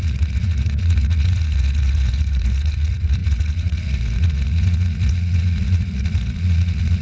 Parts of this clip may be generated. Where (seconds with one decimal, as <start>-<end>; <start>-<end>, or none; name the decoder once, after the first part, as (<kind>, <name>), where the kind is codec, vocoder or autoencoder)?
0.0-7.0 (vocoder, Vocos)